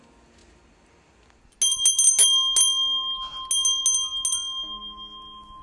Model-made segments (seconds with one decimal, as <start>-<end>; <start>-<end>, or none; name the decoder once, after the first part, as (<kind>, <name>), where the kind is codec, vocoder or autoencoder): none